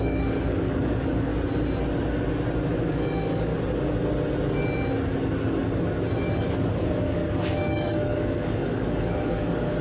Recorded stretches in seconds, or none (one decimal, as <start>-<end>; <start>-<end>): 1.3-2.7; 3.5-6.6